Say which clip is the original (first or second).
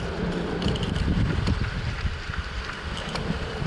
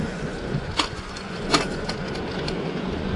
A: first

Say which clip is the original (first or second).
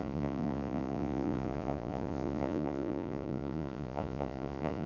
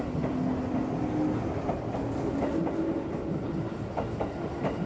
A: second